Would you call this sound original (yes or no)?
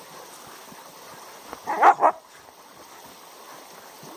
yes